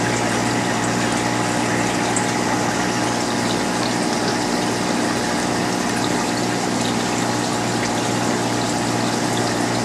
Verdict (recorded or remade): recorded